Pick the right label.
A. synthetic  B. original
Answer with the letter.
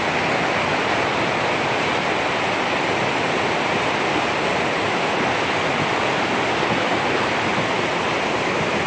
B